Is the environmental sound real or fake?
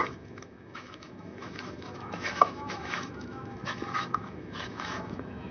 fake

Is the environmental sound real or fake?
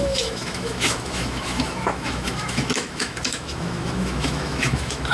fake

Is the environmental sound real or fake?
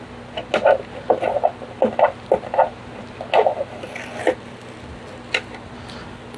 real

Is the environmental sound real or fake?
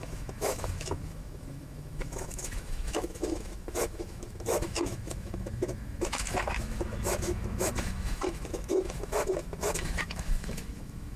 fake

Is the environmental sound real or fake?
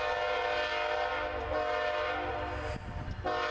real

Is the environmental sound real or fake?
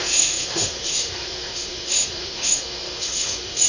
fake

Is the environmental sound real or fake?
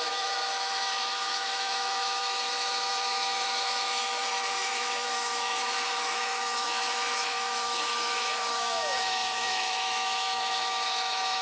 fake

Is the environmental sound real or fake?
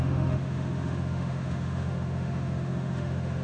fake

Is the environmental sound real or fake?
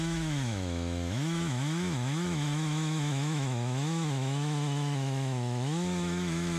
fake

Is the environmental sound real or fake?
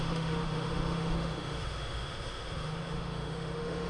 fake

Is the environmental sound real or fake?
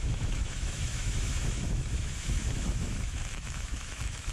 fake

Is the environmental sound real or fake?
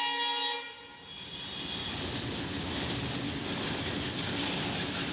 real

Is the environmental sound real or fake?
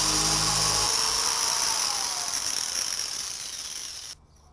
real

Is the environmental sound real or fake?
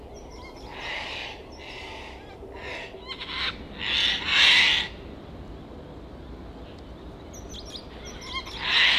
real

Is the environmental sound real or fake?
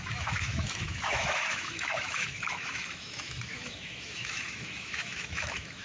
fake